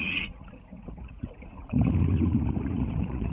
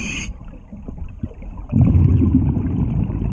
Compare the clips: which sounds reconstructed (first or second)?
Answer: first